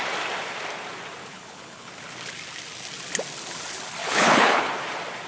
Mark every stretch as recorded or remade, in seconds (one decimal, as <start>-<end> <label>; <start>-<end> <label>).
0.0-1.2 recorded; 1.2-1.9 remade; 1.9-4.0 recorded; 4.0-4.7 remade; 4.7-5.3 recorded